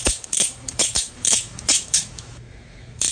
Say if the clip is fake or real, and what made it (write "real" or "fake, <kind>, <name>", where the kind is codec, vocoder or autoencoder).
fake, autoencoder, DAC-VAE